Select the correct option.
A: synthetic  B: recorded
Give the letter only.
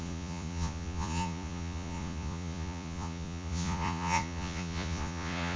A